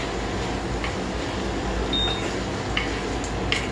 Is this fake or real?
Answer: real